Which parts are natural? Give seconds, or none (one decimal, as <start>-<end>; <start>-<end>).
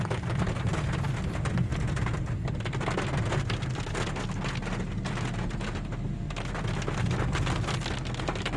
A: 0.0-8.6